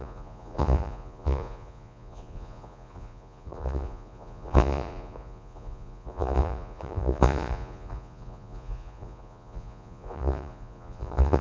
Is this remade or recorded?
remade